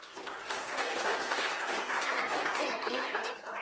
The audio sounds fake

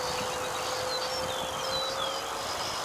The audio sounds real